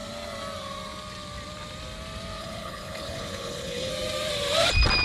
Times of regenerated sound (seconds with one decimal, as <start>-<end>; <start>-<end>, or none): 2.4-3.9